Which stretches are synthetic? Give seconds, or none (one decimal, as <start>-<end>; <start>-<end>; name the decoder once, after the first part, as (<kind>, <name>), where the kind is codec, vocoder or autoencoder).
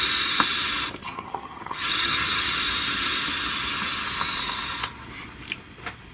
1.0-2.6 (vocoder, HiFi-GAN)